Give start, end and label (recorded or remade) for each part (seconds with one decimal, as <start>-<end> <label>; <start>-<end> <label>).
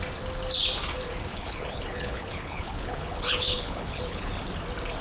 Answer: 0.0-1.3 recorded; 1.3-4.3 remade; 4.3-5.0 recorded